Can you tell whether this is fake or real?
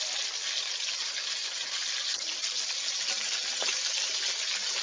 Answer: real